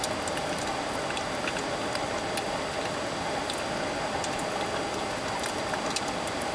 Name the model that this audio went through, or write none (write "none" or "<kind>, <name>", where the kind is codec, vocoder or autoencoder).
none